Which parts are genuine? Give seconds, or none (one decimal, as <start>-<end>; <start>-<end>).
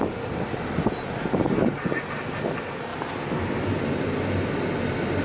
0.0-5.2